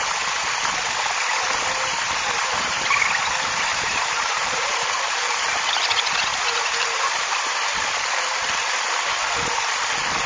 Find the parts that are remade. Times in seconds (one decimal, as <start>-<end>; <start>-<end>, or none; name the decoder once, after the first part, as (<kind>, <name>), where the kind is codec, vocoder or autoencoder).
3.7-5.6 (vocoder, BigVGAN v2); 6.3-7.5